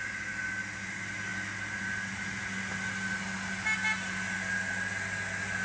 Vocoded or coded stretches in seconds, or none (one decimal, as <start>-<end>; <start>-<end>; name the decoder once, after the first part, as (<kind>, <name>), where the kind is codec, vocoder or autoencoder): none